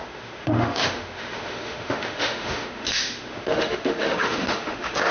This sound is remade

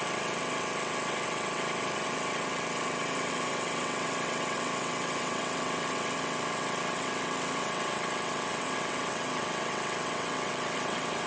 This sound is remade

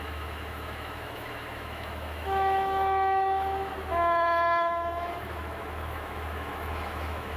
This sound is remade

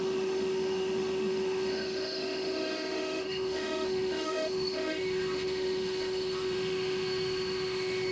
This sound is remade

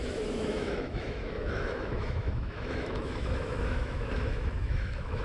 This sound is remade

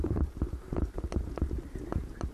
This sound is remade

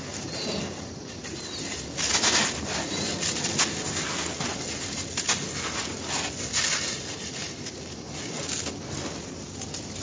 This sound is recorded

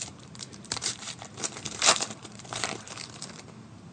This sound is remade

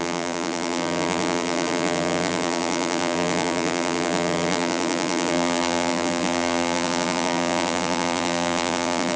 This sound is remade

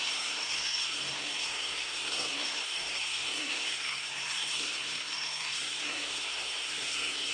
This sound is remade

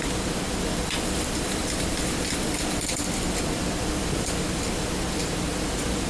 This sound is remade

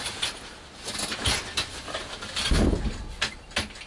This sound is recorded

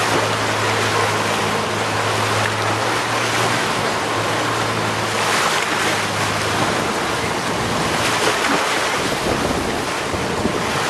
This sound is recorded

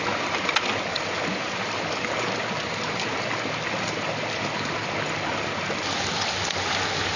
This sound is recorded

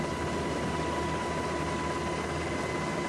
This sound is recorded